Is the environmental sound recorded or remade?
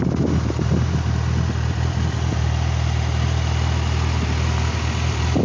recorded